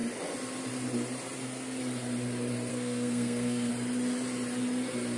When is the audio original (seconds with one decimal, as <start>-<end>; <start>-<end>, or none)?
0.0-2.7; 3.7-5.2